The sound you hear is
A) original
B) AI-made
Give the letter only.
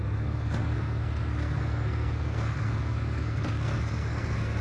B